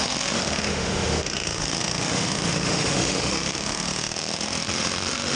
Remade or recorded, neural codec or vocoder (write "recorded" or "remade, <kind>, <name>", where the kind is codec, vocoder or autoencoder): remade, autoencoder, DAC-VAE